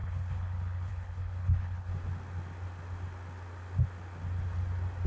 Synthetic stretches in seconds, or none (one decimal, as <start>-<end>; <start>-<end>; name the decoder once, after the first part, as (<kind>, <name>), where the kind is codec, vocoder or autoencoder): 0.0-1.9 (codec, HILCodec)